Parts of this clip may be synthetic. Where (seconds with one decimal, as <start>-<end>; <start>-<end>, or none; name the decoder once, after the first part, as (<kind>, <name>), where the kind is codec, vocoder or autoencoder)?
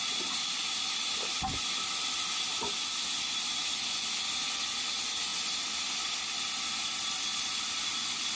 none